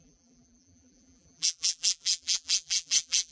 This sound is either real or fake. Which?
fake